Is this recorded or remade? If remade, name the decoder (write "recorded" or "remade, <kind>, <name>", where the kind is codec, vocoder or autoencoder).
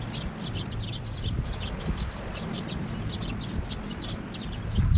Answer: recorded